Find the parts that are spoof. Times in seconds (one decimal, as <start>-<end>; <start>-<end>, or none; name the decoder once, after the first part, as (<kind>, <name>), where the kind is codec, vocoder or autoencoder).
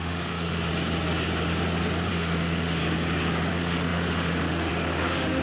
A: 0.0-0.7 (autoencoder, DAC-VAE); 2.1-2.8; 3.5-5.4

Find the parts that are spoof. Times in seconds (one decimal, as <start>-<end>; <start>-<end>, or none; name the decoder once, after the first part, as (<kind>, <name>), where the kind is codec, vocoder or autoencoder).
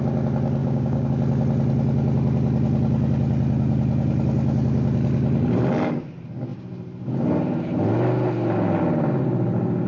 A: 0.6-1.1 (codec, DAC)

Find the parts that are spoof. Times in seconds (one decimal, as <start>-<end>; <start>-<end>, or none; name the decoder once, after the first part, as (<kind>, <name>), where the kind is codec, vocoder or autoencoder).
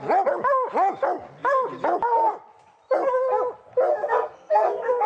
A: 3.9-5.1 (codec, SNAC)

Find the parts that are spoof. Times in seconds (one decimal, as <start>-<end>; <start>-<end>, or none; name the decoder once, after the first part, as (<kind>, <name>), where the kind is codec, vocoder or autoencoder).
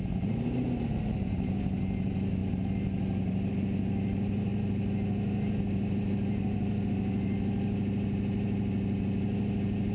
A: none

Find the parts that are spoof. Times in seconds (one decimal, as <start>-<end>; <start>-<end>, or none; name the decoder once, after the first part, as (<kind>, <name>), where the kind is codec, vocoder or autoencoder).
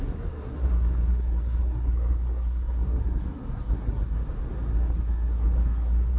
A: 0.0-4.2 (codec, SNAC); 4.7-6.2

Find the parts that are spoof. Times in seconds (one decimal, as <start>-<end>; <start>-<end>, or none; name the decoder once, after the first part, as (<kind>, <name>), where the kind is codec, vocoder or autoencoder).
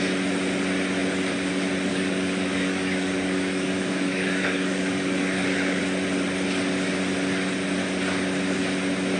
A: 1.9-5.8 (codec, DAC)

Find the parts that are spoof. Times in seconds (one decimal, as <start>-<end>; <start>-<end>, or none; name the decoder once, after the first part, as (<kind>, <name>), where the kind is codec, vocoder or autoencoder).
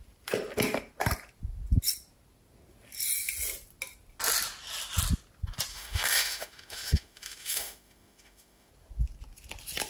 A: 5.7-8.7 (autoencoder, DAC-VAE)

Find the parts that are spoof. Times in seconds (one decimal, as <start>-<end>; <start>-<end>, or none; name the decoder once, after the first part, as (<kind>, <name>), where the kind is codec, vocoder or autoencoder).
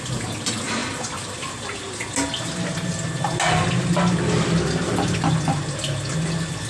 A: 0.8-2.0 (vocoder, BigVGAN v2)